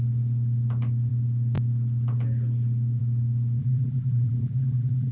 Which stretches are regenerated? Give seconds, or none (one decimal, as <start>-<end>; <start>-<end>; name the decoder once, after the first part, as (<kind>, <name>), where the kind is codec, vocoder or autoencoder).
3.6-5.1 (vocoder, BigVGAN v2)